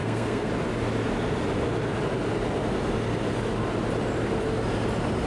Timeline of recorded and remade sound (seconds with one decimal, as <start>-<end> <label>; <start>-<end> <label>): 0.0-0.5 remade; 0.5-5.3 recorded